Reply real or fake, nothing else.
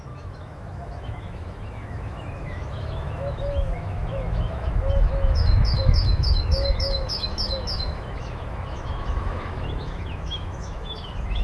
fake